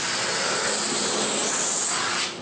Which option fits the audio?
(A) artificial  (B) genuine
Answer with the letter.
B